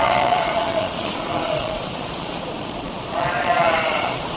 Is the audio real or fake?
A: fake